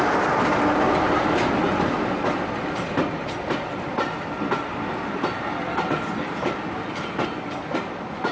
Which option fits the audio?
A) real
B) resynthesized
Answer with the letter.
A